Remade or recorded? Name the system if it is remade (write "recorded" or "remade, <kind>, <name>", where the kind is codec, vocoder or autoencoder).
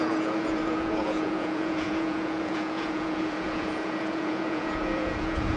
remade, vocoder, Vocos